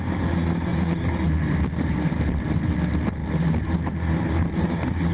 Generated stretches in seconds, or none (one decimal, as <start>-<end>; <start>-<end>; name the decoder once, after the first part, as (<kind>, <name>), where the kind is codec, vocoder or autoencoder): 0.7-2.3 (vocoder, BigVGAN v2)